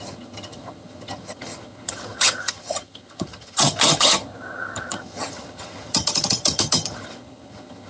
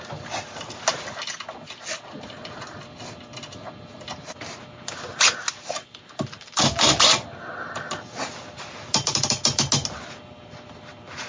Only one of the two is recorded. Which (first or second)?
second